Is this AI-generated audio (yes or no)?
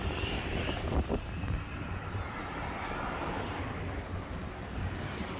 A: no